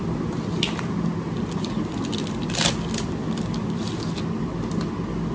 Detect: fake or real real